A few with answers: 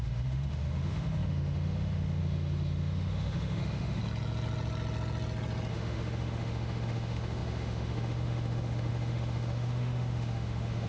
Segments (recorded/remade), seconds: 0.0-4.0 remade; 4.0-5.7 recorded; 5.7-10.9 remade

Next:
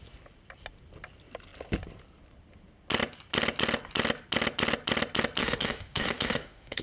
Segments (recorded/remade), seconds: 0.0-5.4 recorded; 5.4-6.8 remade

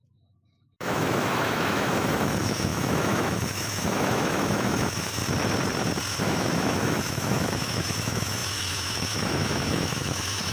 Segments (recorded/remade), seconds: 0.0-5.2 remade; 5.2-6.2 recorded; 6.2-10.5 remade